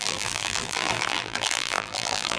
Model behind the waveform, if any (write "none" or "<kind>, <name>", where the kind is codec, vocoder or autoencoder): vocoder, BigVGAN v2